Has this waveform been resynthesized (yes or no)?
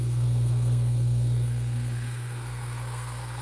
yes